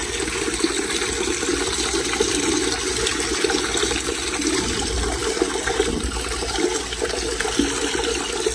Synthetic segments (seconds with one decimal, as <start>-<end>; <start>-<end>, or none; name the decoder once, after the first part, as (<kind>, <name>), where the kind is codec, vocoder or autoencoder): none